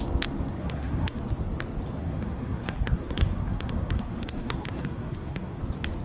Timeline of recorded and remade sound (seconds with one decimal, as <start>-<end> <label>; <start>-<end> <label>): 0.0-0.6 recorded; 0.6-1.2 remade; 1.2-2.0 recorded; 2.0-5.6 remade; 5.6-6.0 recorded